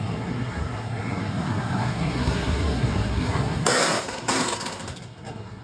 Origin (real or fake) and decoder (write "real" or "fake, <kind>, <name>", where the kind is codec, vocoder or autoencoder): fake, codec, SNAC